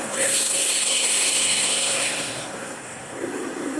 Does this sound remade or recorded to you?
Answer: remade